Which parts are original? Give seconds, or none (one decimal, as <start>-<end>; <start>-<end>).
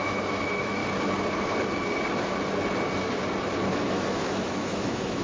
0.8-3.9